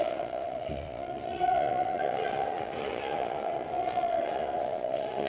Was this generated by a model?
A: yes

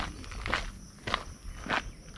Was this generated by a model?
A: no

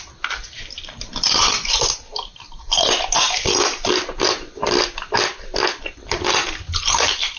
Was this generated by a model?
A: no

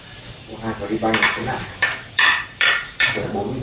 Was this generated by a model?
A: yes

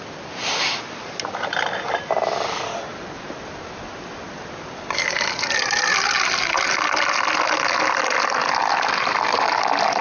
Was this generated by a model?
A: no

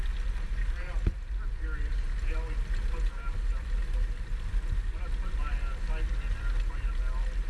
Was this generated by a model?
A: no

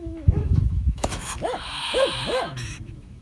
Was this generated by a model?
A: yes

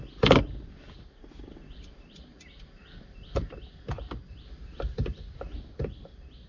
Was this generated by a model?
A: no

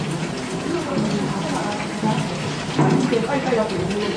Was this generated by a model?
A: no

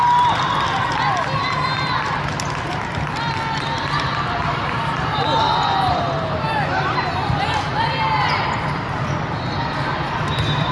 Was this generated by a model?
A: no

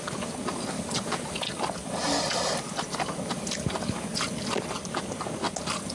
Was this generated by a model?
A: no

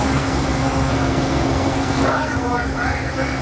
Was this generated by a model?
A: yes